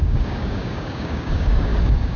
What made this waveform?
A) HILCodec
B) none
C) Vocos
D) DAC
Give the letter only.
D